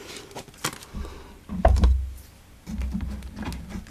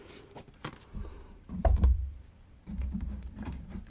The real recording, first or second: first